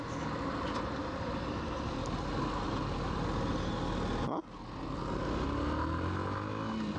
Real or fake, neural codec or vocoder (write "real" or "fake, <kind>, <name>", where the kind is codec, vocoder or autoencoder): real